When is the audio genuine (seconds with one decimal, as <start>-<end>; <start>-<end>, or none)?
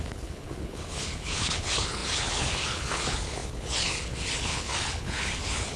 none